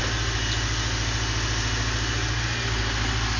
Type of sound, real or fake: real